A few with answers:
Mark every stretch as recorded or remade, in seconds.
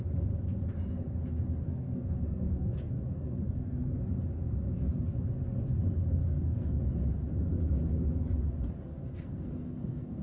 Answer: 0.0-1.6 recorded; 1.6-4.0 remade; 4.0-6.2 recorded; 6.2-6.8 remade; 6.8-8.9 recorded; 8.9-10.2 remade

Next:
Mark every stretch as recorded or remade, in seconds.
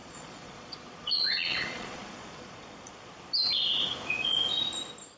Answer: 0.0-3.1 remade; 3.1-5.2 recorded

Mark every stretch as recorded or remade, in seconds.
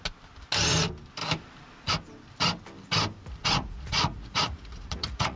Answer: 0.0-3.4 recorded; 3.4-5.4 remade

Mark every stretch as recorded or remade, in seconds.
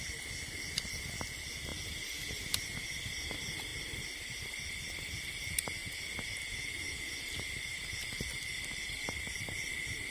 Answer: 0.0-10.1 recorded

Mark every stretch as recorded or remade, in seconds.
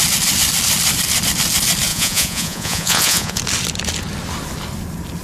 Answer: 0.0-1.9 recorded; 1.9-3.4 remade; 3.4-5.2 recorded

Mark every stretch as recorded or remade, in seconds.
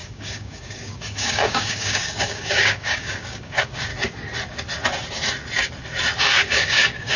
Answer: 0.0-3.9 remade; 3.9-6.2 recorded; 6.2-7.2 remade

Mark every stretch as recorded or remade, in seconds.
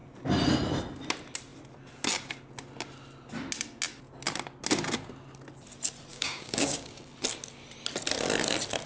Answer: 0.0-6.1 recorded; 6.1-7.0 remade; 7.0-8.9 recorded